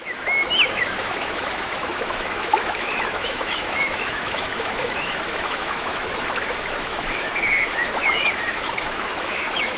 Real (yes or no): no